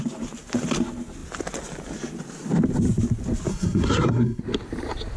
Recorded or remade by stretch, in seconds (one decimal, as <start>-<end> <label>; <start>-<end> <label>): 0.0-3.5 recorded; 3.5-4.4 remade; 4.4-5.2 recorded

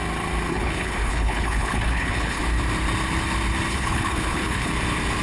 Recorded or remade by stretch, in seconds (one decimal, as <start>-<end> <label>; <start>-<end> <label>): 0.0-0.5 recorded; 0.5-2.4 remade; 2.4-3.7 recorded; 3.7-4.7 remade; 4.7-5.2 recorded

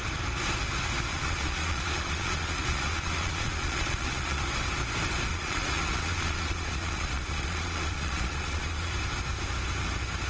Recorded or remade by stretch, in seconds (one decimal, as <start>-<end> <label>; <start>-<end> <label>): 0.0-1.1 recorded; 1.1-4.4 remade; 4.4-5.3 recorded; 5.3-8.9 remade; 8.9-10.3 recorded

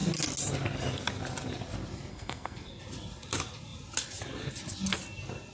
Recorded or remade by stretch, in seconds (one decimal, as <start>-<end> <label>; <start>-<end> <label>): 0.0-2.1 recorded; 2.1-2.8 remade; 2.8-5.5 recorded

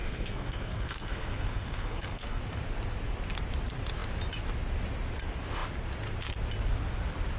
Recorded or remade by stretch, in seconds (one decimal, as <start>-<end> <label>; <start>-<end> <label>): 0.0-2.4 remade; 2.4-7.4 recorded

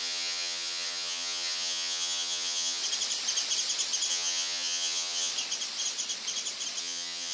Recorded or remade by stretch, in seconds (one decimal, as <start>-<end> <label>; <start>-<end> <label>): 0.0-2.8 remade; 2.8-4.1 recorded; 4.1-5.3 remade; 5.3-6.8 recorded; 6.8-7.3 remade

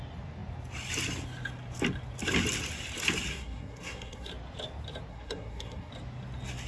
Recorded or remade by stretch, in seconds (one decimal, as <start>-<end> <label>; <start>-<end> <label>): 0.0-3.3 recorded; 3.3-4.3 remade; 4.3-5.1 recorded; 5.1-5.9 remade; 5.9-6.7 recorded

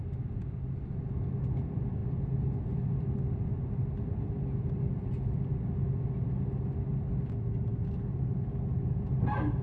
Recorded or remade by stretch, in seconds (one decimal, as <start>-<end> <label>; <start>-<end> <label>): 0.0-9.6 recorded